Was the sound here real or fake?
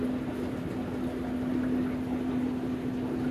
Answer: real